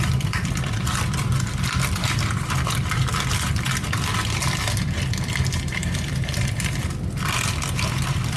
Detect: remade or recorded recorded